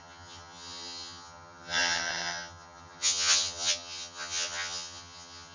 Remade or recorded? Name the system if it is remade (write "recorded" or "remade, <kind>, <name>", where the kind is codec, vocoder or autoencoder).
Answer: remade, vocoder, HiFi-GAN